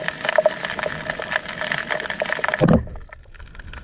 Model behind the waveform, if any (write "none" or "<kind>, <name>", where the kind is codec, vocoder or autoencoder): none